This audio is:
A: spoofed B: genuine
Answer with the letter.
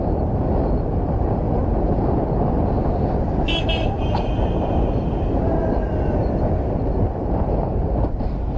B